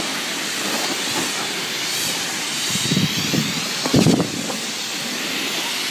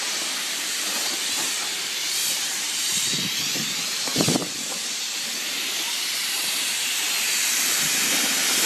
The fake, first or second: second